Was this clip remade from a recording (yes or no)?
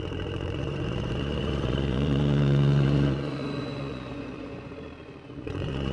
yes